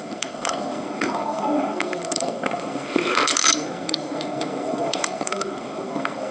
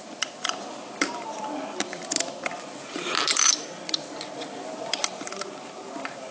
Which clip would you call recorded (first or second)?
second